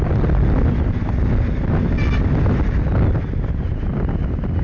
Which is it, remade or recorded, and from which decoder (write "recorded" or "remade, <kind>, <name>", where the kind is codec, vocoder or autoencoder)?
recorded